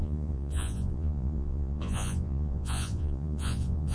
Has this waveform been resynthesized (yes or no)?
yes